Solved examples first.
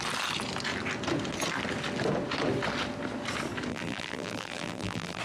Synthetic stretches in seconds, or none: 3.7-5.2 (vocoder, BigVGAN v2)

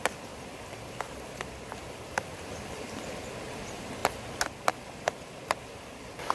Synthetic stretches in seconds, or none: none

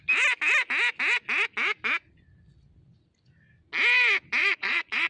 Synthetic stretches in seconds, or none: 4.4-5.1 (vocoder, Vocos)

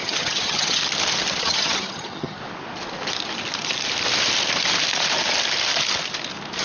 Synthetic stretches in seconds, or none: 0.0-0.8 (vocoder, HiFi-GAN); 1.4-2.4

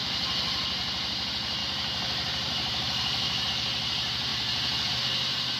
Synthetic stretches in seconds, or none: 1.6-3.5 (vocoder, BigVGAN v2); 4.3-4.9

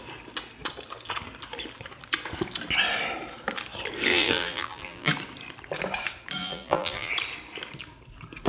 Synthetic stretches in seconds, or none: 4.1-5.1 (vocoder, BigVGAN v2); 6.4-7.1

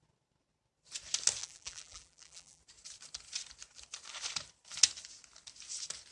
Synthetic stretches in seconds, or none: 1.4-2.6 (vocoder, BigVGAN v2)